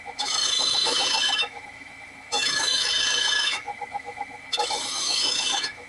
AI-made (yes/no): yes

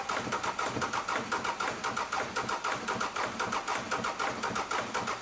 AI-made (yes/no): no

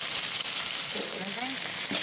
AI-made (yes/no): no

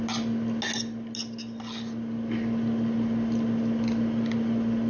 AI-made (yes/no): no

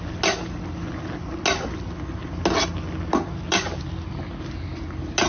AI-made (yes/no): no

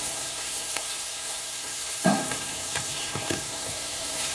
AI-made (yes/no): yes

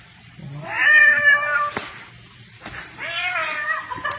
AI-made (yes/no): no